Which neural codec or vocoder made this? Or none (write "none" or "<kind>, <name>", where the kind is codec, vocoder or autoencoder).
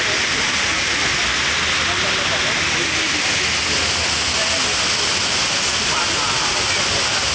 none